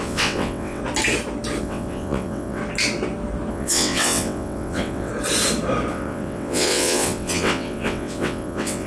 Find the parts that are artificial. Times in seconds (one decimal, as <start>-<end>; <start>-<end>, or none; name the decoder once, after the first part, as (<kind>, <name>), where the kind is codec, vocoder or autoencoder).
0.0-0.8 (vocoder, WaveNeXt); 1.6-2.6; 3.5-5.1; 5.9-8.9